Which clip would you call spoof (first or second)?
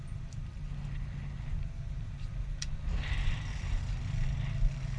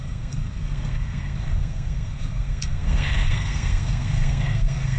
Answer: second